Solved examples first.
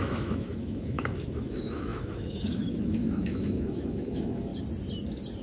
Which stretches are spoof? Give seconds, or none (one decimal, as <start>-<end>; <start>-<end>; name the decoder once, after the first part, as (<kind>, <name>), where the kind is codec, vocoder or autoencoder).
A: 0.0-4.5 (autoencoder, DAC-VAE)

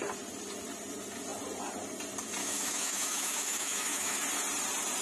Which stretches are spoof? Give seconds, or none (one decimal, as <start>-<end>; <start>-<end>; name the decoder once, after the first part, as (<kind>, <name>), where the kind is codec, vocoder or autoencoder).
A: 2.4-4.2 (autoencoder, DAC-VAE)

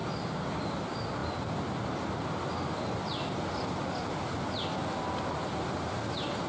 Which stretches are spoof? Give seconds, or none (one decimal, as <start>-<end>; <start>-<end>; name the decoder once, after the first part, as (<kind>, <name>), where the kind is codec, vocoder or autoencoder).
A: none

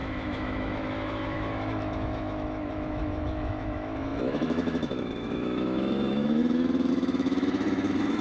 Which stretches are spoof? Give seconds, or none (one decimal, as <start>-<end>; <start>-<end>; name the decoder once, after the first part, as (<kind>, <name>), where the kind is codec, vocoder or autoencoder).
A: 0.0-8.2 (autoencoder, DAC-VAE)

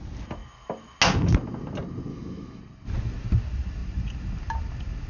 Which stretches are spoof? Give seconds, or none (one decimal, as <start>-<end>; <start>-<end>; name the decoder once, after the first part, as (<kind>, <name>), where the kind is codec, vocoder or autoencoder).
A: 2.1-2.6 (autoencoder, DAC-VAE)

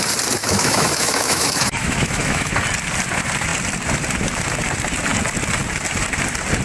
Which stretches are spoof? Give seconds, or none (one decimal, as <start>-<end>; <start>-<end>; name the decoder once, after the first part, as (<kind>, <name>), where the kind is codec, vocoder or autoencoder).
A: 0.4-2.5 (autoencoder, DAC-VAE)